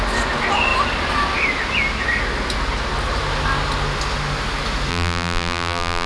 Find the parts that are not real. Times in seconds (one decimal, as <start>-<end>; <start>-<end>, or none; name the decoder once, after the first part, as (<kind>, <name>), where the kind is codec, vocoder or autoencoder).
4.9-6.1 (vocoder, BigVGAN v2)